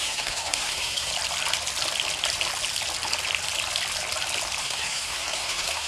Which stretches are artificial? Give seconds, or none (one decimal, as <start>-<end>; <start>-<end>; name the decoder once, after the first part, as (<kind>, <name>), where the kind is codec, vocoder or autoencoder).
0.0-1.1 (codec, SNAC); 4.6-5.9